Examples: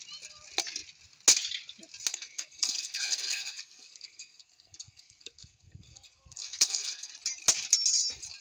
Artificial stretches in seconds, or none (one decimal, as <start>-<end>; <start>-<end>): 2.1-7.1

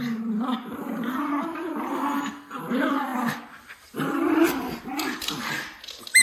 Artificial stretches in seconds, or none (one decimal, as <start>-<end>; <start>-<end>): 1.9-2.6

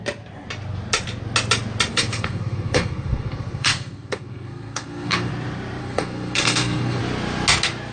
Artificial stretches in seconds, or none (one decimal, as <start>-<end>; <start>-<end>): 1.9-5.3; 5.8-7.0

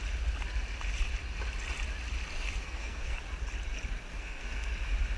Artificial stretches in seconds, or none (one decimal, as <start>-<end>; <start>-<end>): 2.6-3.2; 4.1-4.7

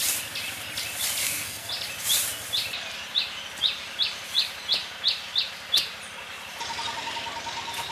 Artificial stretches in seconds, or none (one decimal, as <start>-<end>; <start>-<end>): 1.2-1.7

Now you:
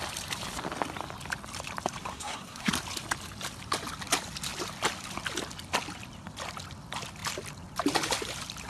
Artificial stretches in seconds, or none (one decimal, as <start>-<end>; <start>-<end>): 2.1-2.7

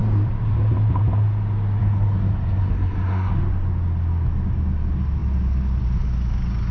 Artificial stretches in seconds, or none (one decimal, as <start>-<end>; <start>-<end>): 1.8-3.3

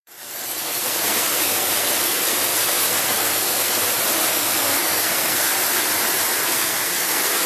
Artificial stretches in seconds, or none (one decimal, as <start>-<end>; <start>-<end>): 0.0-3.8; 4.3-5.5; 6.4-7.5